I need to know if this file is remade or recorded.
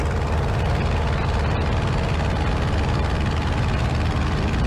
recorded